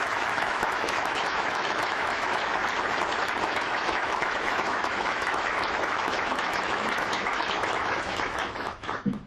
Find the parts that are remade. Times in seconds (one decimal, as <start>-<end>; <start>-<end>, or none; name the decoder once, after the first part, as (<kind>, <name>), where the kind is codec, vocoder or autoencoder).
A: 0.0-2.6 (autoencoder, DAC-VAE); 3.4-9.3